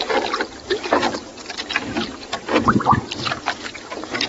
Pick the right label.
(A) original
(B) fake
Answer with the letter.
A